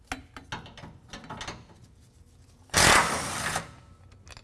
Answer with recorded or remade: recorded